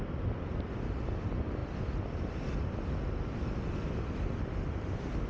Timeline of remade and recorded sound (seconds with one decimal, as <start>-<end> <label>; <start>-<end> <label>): 0.0-5.3 recorded